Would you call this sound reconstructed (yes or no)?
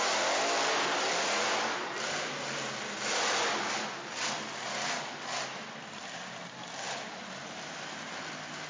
no